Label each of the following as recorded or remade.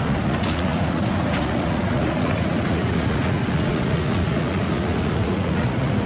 remade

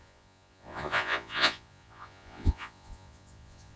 remade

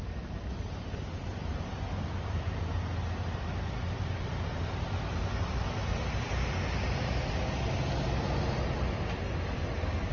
recorded